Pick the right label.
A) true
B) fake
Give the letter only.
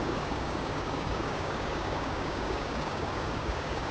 B